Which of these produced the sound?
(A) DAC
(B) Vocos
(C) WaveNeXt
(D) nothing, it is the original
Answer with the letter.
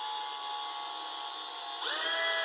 D